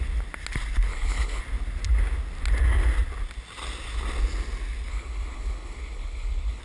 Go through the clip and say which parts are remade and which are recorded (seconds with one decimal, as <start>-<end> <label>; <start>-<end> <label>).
0.0-0.9 recorded; 0.9-1.4 remade; 1.4-4.9 recorded; 4.9-6.6 remade